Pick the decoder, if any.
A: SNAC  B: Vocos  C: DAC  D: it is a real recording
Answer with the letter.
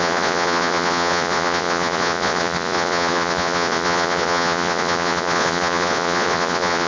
B